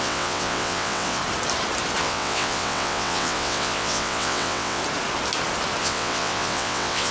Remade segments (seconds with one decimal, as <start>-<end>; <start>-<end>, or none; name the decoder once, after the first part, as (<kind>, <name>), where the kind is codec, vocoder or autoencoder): 0.0-1.2 (vocoder, WaveNeXt); 2.0-4.8; 5.8-7.1